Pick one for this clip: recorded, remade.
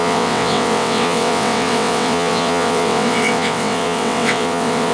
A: remade